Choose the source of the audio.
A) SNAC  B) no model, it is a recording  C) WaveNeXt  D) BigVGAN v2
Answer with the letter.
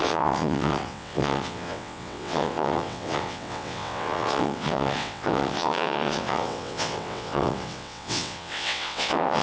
C